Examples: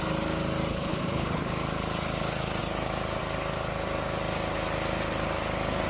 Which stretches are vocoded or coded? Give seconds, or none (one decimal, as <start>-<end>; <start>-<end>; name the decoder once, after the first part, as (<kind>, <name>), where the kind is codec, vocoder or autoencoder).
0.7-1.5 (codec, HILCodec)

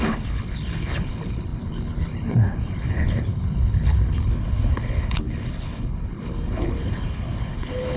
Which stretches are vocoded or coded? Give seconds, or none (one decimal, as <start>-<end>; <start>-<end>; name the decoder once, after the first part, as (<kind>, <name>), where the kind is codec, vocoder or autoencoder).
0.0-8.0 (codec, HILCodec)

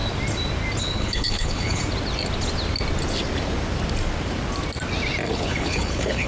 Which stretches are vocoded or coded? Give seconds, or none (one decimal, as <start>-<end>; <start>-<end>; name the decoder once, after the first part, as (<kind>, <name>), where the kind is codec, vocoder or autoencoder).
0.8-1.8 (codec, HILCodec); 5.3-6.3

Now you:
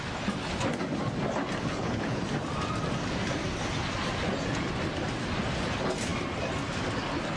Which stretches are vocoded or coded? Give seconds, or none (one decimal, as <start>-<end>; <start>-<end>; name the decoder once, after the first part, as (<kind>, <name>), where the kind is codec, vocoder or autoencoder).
1.6-2.2 (codec, HILCodec)

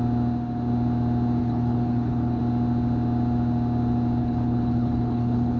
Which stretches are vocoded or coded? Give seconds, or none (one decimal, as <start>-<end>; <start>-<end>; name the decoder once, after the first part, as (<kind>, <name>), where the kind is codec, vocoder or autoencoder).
1.4-2.4 (codec, HILCodec); 4.2-5.6

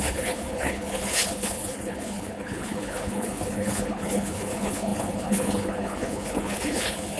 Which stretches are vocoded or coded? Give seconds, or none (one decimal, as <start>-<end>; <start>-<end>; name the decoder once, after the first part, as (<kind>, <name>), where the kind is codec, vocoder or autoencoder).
0.0-7.2 (codec, HILCodec)